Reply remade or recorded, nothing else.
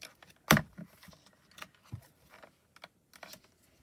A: recorded